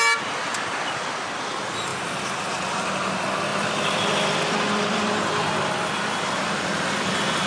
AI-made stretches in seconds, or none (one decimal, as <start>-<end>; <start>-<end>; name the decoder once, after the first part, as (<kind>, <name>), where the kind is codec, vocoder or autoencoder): 3.5-5.3 (vocoder, BigVGAN v2)